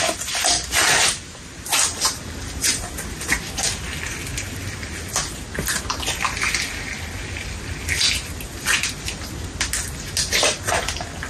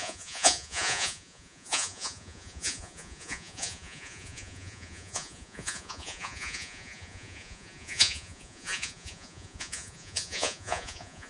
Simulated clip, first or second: second